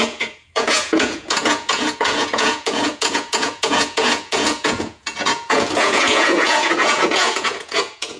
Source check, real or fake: fake